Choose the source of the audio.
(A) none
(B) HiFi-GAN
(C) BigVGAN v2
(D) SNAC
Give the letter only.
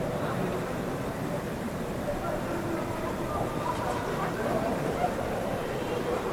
C